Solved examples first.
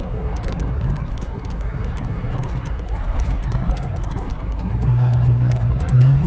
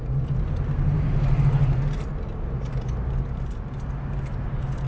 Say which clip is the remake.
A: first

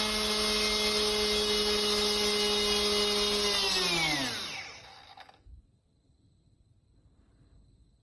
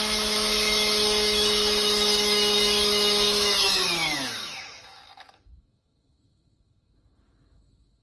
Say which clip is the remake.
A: second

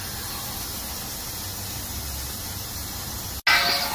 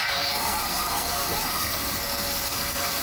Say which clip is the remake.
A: second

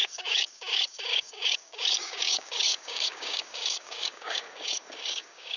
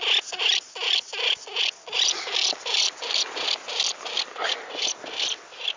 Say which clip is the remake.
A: first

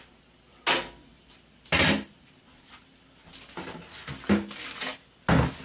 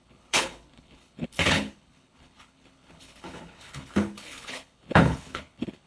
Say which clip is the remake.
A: second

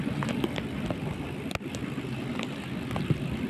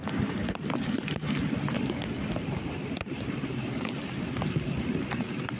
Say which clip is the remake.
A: second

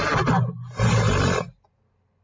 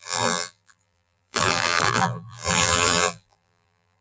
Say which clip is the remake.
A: second